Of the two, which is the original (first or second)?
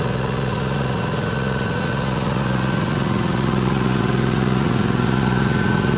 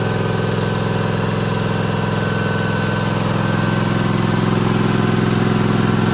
second